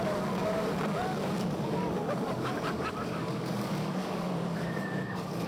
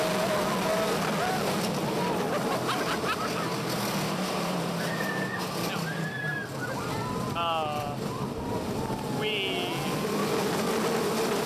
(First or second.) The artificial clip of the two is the first